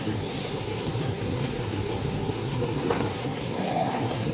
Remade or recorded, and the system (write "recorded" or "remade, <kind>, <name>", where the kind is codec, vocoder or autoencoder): remade, codec, SNAC